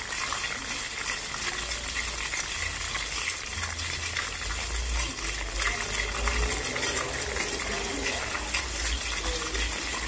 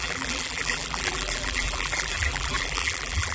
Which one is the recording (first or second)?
first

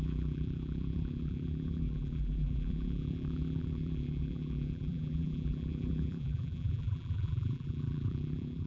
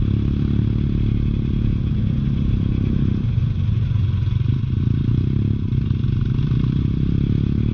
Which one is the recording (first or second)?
second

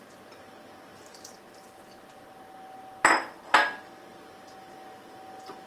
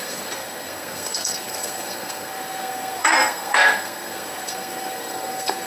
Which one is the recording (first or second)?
first